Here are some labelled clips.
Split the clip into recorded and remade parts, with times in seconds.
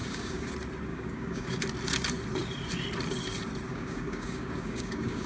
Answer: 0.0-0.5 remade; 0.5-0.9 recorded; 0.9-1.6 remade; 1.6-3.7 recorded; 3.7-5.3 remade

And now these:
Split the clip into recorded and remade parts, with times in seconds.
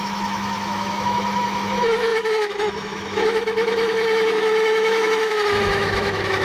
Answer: 0.0-6.4 remade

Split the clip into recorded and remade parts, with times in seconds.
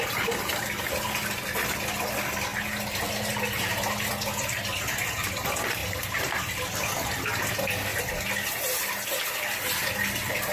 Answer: 0.0-10.5 recorded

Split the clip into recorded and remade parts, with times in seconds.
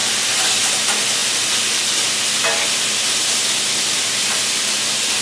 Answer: 0.0-5.2 recorded